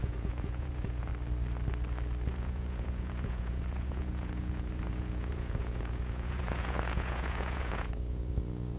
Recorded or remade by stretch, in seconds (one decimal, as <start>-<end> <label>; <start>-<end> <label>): 0.0-1.1 remade; 1.1-2.3 recorded; 2.3-8.8 remade